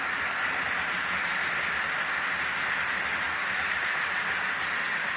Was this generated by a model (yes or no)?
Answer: no